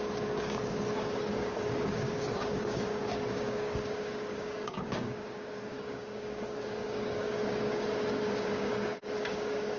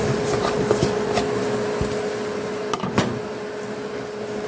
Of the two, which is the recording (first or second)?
second